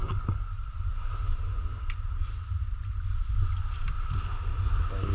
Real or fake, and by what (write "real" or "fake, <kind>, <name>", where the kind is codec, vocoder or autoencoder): real